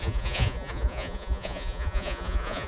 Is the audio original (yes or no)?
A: no